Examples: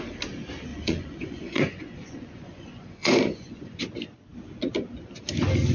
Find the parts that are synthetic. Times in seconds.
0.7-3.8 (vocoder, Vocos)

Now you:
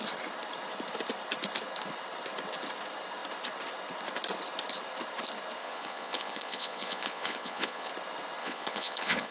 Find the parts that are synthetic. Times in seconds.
5.6-7.9 (vocoder, Vocos); 8.4-9.3

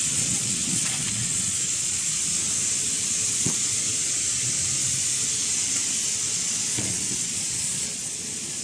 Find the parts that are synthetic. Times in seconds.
0.0-2.2 (vocoder, Vocos); 3.3-3.7; 6.3-8.6

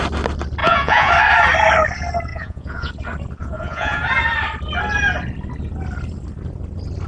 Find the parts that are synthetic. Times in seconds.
0.6-1.1 (vocoder, Vocos); 2.3-2.9; 3.4-4.0

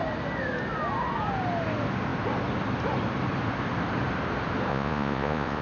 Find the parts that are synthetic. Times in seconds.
4.7-5.6 (vocoder, Vocos)

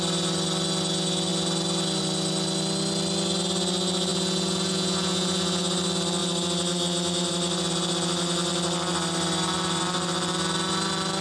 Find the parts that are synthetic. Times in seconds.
4.1-5.6 (vocoder, Vocos)

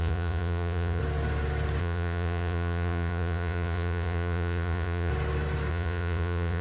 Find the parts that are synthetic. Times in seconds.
0.0-1.0 (vocoder, Vocos); 1.8-5.1; 5.7-6.6